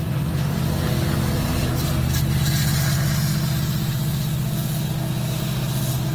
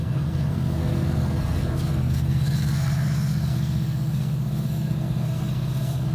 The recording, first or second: first